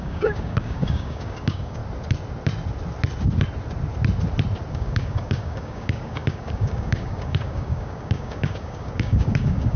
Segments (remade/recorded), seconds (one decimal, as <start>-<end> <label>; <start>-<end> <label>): 0.0-1.8 remade; 1.8-4.7 recorded; 4.7-9.8 remade